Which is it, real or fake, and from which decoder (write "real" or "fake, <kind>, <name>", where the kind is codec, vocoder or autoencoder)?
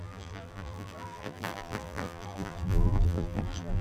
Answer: fake, vocoder, BigVGAN v2